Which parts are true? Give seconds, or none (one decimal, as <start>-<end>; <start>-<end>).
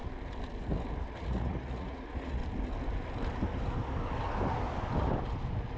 0.0-1.2; 2.4-5.8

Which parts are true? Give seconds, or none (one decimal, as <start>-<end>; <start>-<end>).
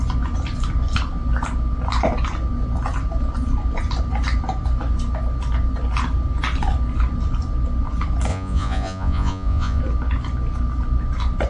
0.0-8.3; 9.8-11.5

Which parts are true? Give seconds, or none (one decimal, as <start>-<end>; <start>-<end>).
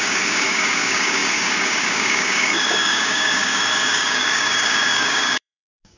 none